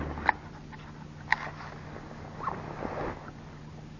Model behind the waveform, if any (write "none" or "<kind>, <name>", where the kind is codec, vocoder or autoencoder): none